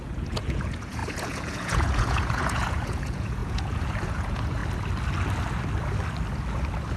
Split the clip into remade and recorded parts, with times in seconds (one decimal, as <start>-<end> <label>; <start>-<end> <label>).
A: 0.0-4.6 remade; 4.6-7.0 recorded